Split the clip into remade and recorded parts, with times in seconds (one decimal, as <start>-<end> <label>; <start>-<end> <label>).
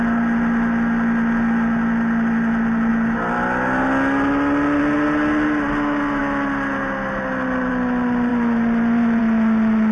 0.0-8.3 recorded; 8.3-9.2 remade; 9.2-9.9 recorded